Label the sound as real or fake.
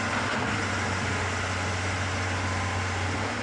real